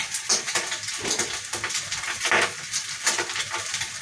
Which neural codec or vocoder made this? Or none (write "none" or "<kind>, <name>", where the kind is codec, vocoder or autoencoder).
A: none